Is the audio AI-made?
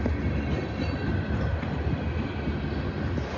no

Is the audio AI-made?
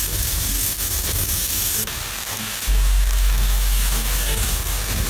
yes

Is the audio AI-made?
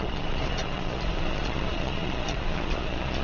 yes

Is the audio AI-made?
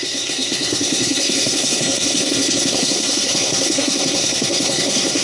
yes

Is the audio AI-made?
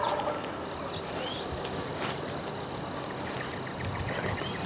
no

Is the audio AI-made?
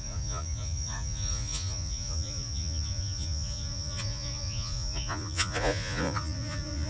yes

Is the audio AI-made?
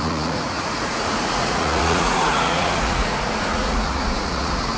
yes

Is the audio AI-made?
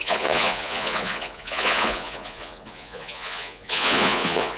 yes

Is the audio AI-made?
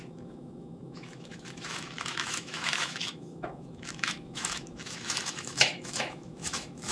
yes